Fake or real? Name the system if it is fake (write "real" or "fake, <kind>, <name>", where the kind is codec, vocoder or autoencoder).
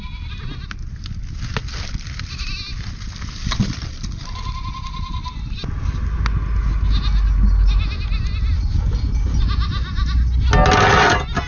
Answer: real